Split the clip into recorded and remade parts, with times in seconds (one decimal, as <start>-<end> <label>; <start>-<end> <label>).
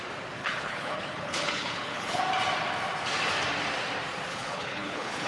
0.0-0.4 recorded; 0.4-2.2 remade; 2.2-4.3 recorded; 4.3-5.3 remade